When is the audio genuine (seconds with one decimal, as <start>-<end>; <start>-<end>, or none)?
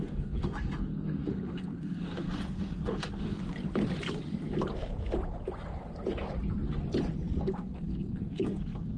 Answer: 3.4-7.4